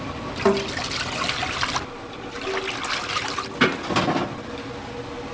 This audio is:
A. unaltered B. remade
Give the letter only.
A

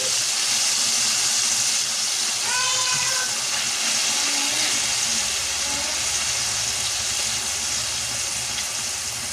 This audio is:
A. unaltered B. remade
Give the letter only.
A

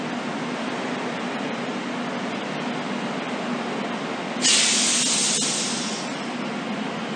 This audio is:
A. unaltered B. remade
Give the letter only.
A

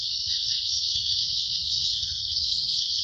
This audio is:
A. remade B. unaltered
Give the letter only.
A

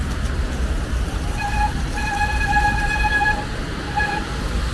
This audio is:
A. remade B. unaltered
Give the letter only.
A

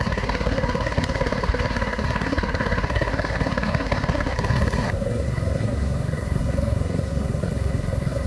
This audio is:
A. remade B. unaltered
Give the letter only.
A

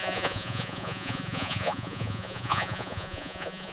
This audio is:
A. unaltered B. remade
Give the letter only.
B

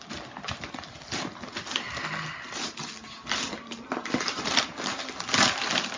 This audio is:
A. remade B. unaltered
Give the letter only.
B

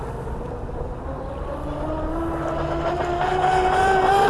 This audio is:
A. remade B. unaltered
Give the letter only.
B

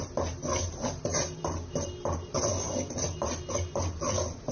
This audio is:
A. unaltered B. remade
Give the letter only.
A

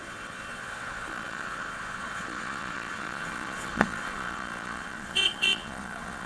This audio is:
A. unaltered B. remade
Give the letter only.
B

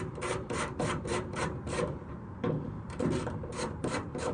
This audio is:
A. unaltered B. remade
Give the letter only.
B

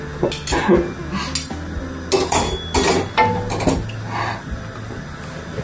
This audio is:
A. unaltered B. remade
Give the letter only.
A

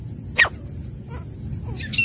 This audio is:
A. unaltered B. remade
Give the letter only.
A